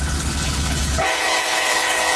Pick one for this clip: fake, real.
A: fake